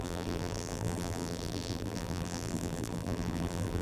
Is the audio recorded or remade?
remade